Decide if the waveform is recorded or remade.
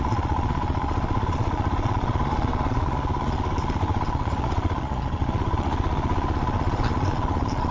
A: remade